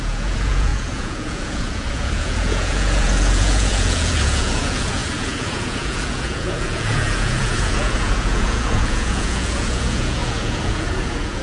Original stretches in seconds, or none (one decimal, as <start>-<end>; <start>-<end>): none